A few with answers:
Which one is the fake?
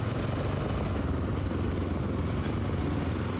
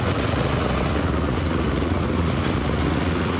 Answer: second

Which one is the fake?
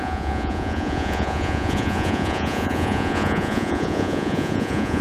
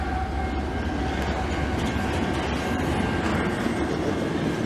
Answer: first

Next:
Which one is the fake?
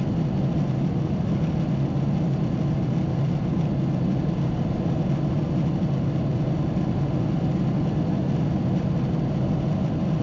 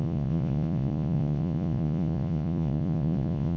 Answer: second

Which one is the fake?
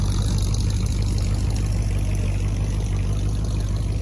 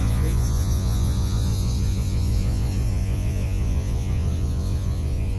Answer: second